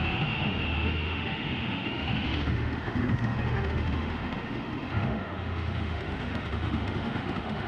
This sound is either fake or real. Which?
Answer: fake